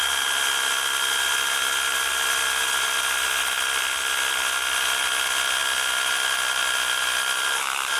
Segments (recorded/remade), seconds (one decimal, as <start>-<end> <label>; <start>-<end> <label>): 0.0-8.0 recorded

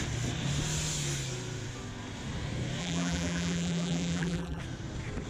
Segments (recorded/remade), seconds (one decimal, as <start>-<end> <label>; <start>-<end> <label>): 0.0-2.8 recorded; 2.8-4.6 remade; 4.6-5.3 recorded